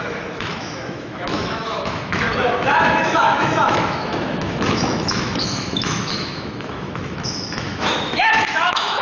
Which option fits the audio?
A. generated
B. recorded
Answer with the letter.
A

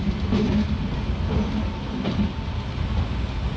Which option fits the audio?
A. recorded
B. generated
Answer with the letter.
A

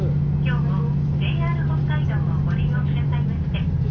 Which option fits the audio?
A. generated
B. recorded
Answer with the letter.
B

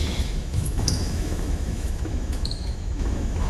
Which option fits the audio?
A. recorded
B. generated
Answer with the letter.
B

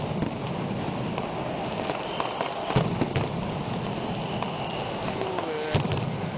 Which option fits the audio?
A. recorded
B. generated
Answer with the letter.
A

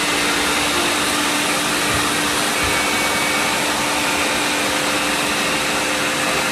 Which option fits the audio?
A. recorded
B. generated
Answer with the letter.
A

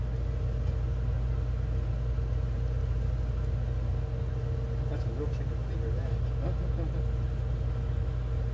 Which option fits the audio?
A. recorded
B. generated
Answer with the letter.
A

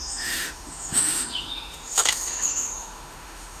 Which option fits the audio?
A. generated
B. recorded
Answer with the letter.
A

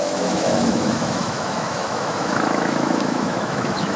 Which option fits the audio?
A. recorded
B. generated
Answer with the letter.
B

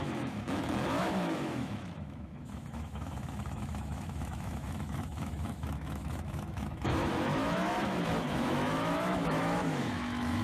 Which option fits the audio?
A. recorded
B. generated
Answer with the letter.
B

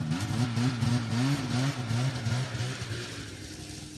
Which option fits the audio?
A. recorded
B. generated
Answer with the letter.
A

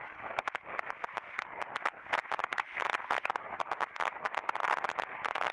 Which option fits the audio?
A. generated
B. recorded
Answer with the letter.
B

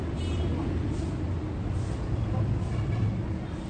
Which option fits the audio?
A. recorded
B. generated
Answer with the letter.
A